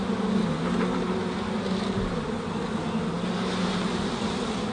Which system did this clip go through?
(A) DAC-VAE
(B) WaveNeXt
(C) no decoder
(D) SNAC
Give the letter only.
C